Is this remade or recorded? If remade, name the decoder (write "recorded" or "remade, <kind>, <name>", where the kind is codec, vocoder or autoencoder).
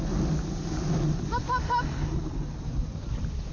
recorded